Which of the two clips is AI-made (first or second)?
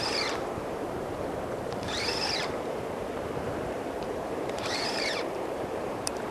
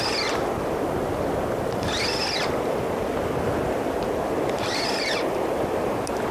first